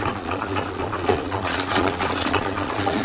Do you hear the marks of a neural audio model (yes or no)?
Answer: yes